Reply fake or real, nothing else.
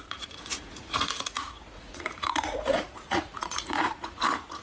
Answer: fake